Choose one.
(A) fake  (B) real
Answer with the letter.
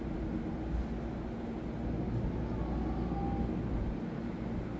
B